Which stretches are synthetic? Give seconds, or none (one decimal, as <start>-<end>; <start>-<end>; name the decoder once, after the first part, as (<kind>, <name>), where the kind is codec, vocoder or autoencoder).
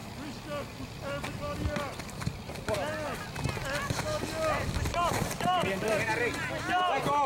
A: none